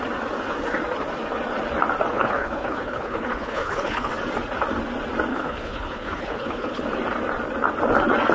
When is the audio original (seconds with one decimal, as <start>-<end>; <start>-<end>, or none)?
0.0-2.1; 4.1-5.3; 6.8-8.3